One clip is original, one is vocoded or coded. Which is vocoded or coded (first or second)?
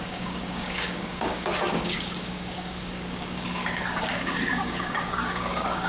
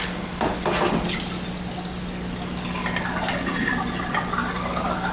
first